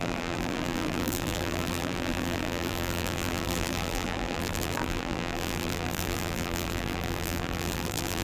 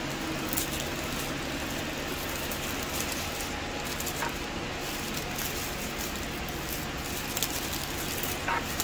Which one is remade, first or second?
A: first